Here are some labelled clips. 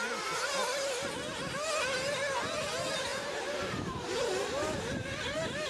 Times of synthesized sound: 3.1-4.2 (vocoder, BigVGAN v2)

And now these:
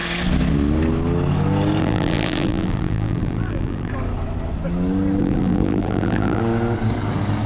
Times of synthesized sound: 1.8-3.9 (vocoder, BigVGAN v2); 5.2-6.4

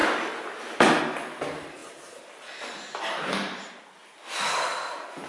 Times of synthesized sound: 0.0-1.0 (vocoder, BigVGAN v2)

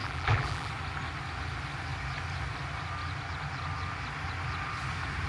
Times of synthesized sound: 0.0-0.7 (vocoder, BigVGAN v2)

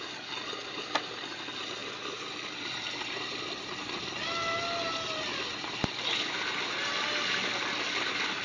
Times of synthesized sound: 0.6-1.2 (vocoder, BigVGAN v2); 1.8-3.4; 5.5-7.7